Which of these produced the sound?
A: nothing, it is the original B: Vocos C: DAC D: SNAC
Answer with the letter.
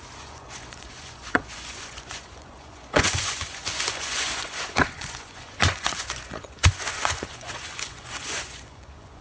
B